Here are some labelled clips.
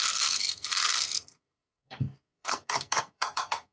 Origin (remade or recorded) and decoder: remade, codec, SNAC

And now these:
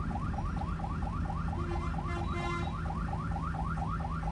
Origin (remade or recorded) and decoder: recorded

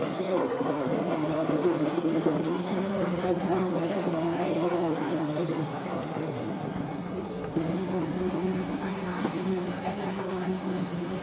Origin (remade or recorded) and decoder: remade, codec, SNAC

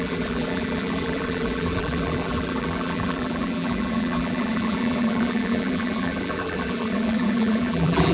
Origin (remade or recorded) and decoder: remade, vocoder, BigVGAN v2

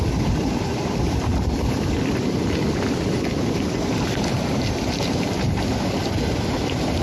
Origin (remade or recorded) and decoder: recorded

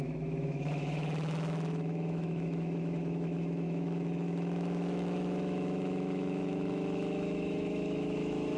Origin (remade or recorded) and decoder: remade, autoencoder, DAC-VAE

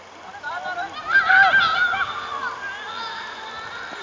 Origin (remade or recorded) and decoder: recorded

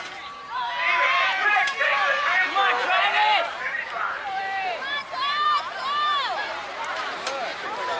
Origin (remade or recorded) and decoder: remade, vocoder, BigVGAN v2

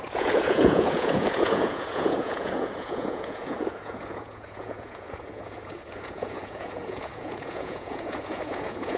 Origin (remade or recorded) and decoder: remade, vocoder, Vocos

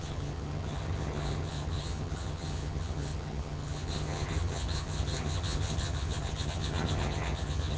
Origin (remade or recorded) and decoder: remade, vocoder, HiFi-GAN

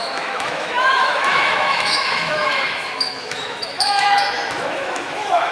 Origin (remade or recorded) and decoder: remade, autoencoder, DAC-VAE